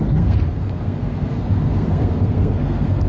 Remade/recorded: remade